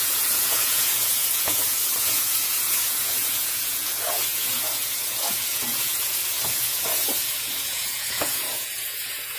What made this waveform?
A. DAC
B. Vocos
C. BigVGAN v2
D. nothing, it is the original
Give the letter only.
B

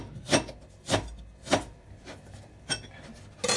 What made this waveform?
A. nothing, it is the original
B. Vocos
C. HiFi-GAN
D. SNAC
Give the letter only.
A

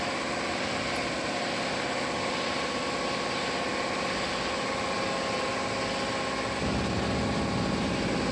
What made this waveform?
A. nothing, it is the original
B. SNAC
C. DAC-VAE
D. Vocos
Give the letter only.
A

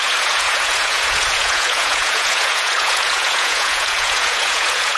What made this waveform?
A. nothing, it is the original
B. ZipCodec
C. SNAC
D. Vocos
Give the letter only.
D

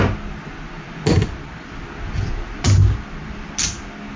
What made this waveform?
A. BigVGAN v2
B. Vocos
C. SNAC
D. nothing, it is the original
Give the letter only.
D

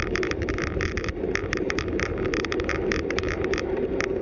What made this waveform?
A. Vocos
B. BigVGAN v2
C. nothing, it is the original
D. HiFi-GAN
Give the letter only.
B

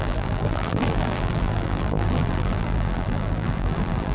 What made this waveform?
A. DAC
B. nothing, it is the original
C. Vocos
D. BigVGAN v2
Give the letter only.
D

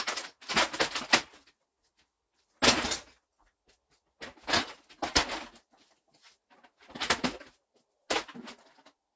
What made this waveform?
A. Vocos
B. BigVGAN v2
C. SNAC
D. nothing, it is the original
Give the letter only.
D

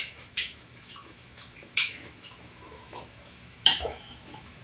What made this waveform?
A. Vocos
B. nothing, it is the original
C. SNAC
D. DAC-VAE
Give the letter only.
D